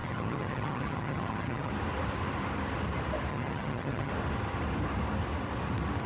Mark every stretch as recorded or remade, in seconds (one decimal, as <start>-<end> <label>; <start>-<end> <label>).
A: 0.0-1.7 remade; 1.7-3.3 recorded; 3.3-4.1 remade; 4.1-6.1 recorded